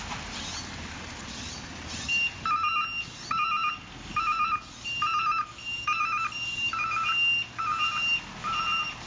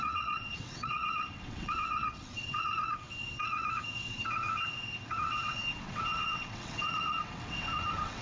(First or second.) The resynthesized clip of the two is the second